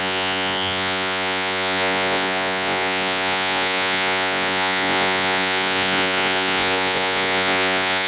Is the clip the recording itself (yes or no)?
no